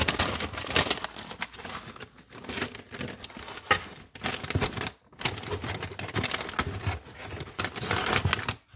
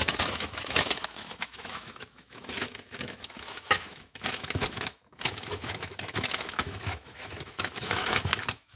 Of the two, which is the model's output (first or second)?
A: second